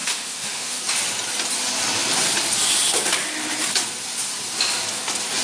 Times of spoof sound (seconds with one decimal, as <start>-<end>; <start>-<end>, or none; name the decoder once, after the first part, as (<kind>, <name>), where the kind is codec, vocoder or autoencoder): 0.0-0.8 (autoencoder, DAC-VAE)